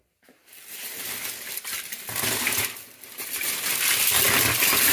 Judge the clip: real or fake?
real